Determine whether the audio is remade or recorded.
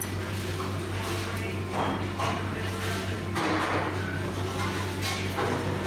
recorded